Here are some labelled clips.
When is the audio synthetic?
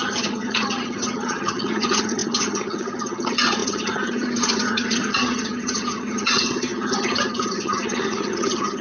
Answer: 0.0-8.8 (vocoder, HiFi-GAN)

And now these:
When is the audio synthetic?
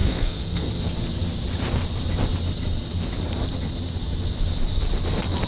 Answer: 0.0-0.7 (codec, SNAC)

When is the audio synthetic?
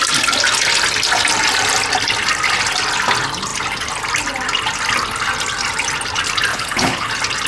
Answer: 6.5-7.1 (codec, HILCodec)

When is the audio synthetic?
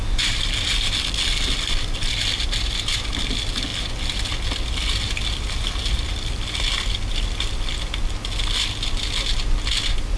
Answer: none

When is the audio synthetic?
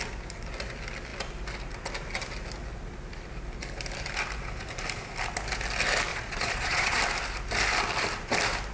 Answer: 6.1-7.0 (vocoder, Vocos)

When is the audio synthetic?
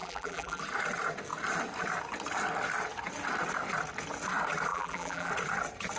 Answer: 0.0-0.6 (vocoder, BigVGAN v2); 4.7-5.3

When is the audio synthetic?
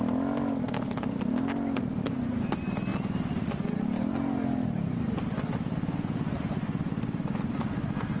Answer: none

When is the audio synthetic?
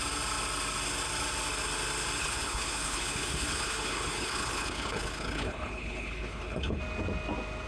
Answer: 2.2-6.8 (codec, HILCodec)